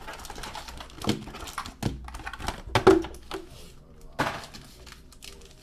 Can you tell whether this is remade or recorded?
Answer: recorded